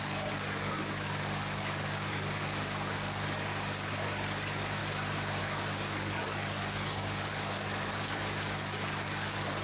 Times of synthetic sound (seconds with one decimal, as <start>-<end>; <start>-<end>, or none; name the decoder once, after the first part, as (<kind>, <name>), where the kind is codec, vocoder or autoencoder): 0.0-4.8 (codec, DAC); 5.4-9.6